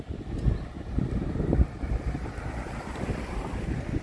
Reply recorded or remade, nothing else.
recorded